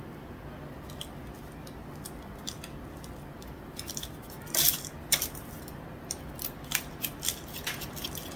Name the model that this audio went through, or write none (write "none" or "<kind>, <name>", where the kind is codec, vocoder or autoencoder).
none